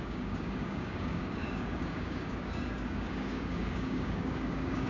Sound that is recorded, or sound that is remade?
remade